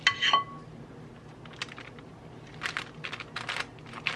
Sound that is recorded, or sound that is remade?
recorded